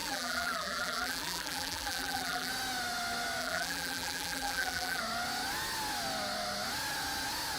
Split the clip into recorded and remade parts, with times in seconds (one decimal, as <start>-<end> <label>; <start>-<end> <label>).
0.0-2.5 remade; 2.5-3.4 recorded; 3.4-5.0 remade; 5.0-7.6 recorded